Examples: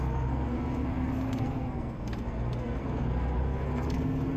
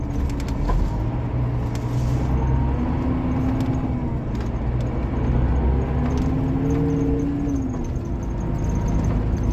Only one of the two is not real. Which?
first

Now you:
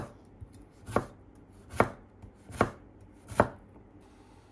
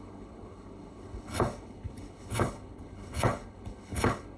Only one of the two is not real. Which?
second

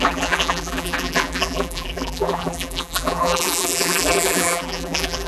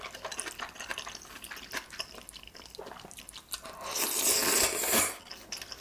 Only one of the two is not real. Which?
first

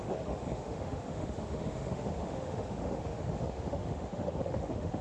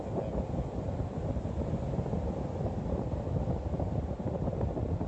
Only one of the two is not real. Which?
first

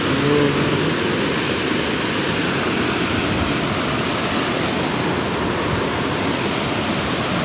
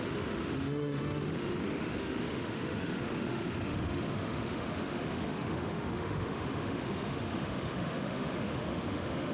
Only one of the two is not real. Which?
second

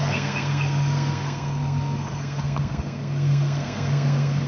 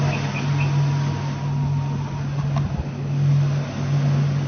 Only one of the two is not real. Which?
first